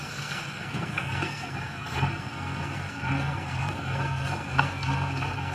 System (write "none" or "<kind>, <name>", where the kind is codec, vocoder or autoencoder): codec, SNAC